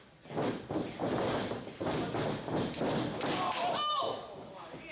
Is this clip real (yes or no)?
yes